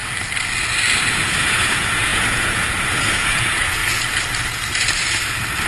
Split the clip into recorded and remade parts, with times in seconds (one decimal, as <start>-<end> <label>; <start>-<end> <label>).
0.0-1.1 recorded; 1.1-3.8 remade; 3.8-5.7 recorded